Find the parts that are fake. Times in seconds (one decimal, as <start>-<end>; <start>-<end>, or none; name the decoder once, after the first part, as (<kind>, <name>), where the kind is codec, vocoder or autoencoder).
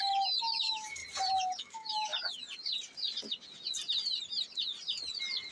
0.0-1.0 (autoencoder, DAC-VAE); 1.6-2.1